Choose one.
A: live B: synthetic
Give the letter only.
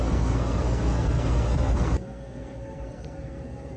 B